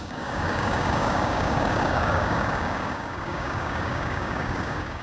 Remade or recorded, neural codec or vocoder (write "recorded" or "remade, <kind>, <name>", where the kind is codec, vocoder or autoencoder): remade, codec, DAC